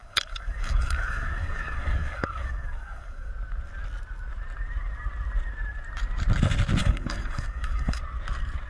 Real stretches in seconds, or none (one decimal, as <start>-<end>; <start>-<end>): 3.3-6.8; 8.0-8.7